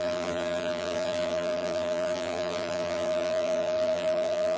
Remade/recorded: remade